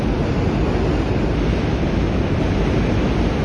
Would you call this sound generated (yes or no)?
no